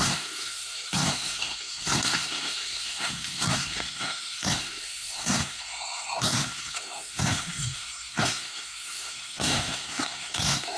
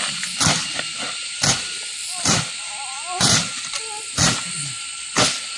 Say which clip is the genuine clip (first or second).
second